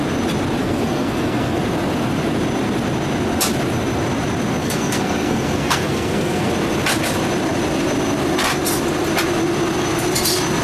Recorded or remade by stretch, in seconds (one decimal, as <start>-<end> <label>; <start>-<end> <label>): 0.0-0.6 recorded; 0.6-1.6 remade; 1.6-4.6 recorded; 4.6-6.5 remade; 6.5-10.6 recorded